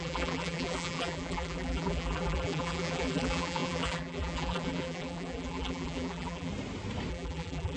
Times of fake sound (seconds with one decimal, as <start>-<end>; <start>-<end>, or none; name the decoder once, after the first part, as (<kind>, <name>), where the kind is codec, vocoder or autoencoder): 0.0-6.5 (vocoder, BigVGAN v2); 7.1-7.8